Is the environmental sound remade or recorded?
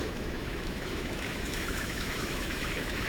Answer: remade